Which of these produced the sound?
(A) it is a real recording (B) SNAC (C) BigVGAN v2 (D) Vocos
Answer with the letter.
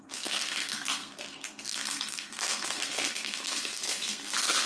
B